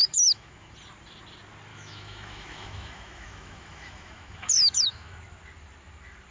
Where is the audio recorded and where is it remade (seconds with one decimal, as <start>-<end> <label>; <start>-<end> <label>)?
0.0-0.7 remade; 0.7-1.7 recorded; 1.7-5.2 remade; 5.2-6.3 recorded